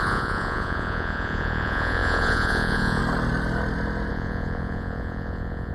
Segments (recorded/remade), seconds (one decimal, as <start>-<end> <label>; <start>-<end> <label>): 0.0-3.0 remade; 3.0-4.1 recorded; 4.1-5.7 remade